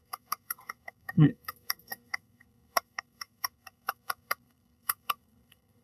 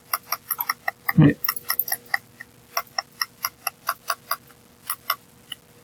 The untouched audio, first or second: second